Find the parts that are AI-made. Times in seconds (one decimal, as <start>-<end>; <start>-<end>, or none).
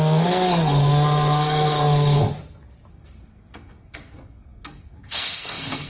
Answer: 0.0-2.2; 2.9-5.9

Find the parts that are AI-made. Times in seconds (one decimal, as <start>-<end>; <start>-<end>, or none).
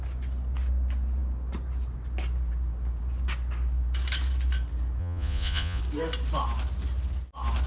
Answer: 5.0-5.8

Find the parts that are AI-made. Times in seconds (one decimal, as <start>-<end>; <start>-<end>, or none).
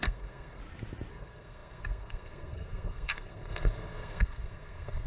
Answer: 0.0-0.6; 1.1-5.1